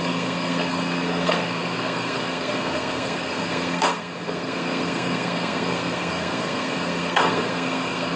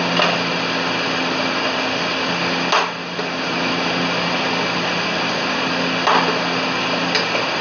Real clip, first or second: second